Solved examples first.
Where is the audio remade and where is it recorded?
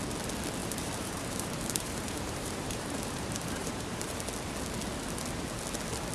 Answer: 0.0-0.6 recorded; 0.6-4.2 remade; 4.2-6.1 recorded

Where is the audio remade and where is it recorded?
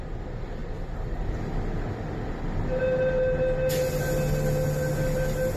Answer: 0.0-5.6 recorded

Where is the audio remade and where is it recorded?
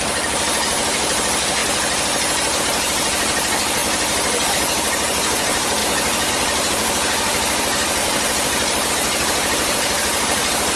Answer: 0.0-1.6 remade; 1.6-2.6 recorded; 2.6-3.8 remade; 3.8-4.5 recorded; 4.5-8.0 remade; 8.0-8.9 recorded; 8.9-10.8 remade